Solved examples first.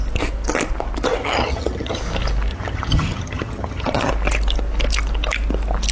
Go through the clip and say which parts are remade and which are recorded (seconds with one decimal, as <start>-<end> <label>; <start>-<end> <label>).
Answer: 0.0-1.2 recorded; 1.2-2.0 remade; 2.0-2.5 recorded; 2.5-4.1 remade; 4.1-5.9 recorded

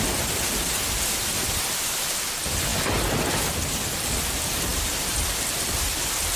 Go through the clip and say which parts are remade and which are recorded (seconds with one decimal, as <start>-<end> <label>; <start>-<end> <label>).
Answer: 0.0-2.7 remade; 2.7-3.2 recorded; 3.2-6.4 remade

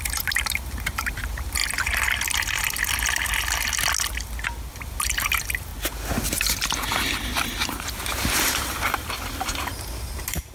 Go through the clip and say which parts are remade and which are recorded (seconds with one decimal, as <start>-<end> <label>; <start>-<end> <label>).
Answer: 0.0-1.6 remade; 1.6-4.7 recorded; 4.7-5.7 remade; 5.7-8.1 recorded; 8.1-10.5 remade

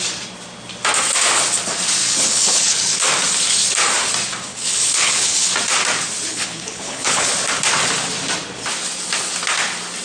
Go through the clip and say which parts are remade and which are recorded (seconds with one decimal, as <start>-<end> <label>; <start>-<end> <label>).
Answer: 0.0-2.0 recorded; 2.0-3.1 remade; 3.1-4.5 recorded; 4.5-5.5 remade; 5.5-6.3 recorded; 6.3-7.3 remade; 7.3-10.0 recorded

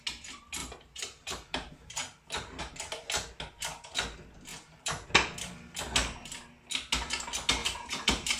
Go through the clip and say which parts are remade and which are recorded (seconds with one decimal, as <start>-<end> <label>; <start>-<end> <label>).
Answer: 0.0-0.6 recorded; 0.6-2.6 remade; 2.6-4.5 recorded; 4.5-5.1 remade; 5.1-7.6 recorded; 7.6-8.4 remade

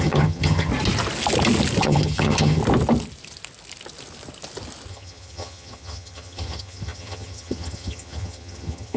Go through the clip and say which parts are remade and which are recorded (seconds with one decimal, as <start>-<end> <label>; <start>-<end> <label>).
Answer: 0.0-0.7 remade; 0.7-1.8 recorded; 1.8-2.6 remade; 2.6-4.9 recorded; 4.9-9.0 remade

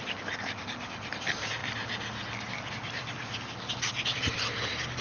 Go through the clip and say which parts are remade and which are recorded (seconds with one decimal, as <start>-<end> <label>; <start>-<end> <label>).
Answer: 0.0-5.0 recorded

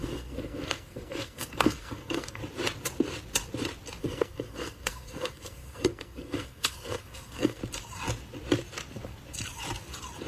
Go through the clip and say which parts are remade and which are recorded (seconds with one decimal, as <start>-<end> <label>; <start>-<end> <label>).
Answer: 0.0-2.4 remade; 2.4-4.0 recorded; 4.0-7.6 remade; 7.6-10.3 recorded